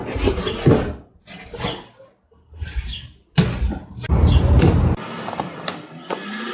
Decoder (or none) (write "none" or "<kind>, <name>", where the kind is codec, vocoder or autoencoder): none